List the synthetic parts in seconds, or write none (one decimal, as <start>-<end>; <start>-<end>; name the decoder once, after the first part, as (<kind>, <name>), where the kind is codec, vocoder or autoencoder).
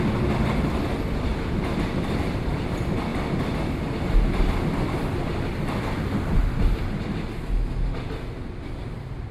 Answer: 1.3-2.2 (vocoder, BigVGAN v2)